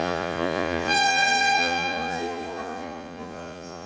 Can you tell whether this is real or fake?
fake